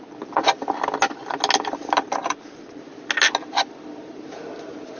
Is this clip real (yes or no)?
yes